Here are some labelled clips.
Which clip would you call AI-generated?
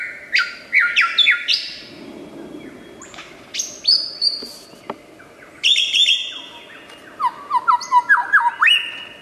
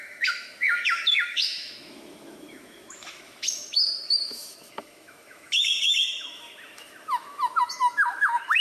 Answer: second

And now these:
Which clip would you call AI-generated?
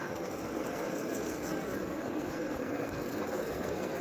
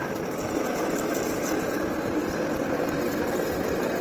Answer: first